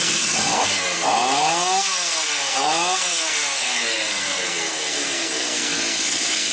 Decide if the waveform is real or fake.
fake